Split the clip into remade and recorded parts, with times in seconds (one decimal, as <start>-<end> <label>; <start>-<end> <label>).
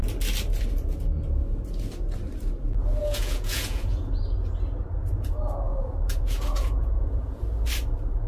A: 0.0-3.0 recorded; 3.0-4.1 remade; 4.1-5.7 recorded; 5.7-7.4 remade; 7.4-8.3 recorded